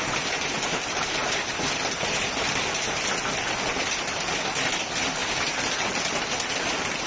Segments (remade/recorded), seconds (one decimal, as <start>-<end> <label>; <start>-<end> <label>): 0.0-7.1 recorded